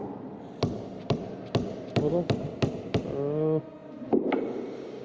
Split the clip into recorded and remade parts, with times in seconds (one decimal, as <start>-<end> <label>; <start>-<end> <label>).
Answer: 0.0-3.0 remade; 3.0-3.8 recorded; 3.8-4.3 remade; 4.3-5.0 recorded